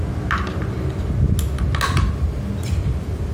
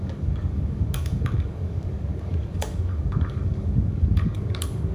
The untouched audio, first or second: first